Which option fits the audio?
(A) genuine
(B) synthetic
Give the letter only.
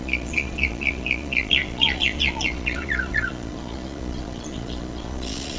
B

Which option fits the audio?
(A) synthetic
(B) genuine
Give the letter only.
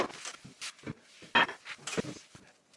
B